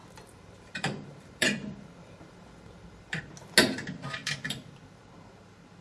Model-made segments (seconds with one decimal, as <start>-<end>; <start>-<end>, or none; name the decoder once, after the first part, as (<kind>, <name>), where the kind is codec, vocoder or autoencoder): 0.0-3.2 (vocoder, BigVGAN v2); 4.2-5.0